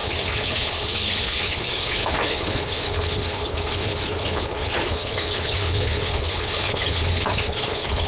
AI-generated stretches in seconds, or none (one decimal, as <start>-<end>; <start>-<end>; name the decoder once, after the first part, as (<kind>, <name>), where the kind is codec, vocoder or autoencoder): 0.0-8.1 (codec, HILCodec)